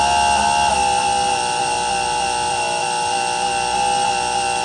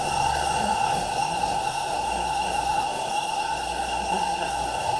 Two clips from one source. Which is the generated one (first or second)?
second